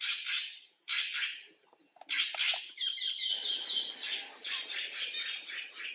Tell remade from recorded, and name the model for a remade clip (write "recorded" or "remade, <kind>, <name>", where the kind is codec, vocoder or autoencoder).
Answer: recorded